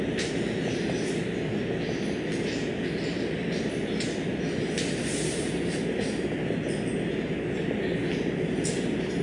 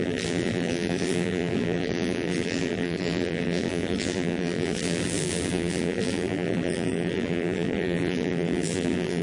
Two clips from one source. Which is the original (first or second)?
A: first